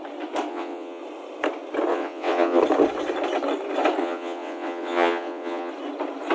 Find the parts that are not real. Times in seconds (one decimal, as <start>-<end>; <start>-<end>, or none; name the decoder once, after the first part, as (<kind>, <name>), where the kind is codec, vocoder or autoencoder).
0.5-1.0 (vocoder, WaveNeXt); 1.9-2.6; 4.0-5.7